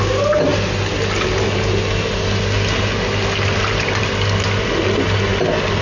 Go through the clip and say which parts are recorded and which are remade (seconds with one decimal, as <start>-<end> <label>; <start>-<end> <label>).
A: 0.0-5.8 recorded